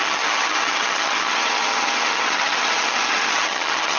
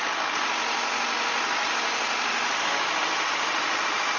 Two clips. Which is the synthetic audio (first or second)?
first